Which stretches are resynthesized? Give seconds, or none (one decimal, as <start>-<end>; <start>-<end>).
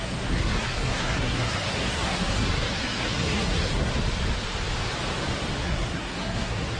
0.0-3.9; 5.6-6.8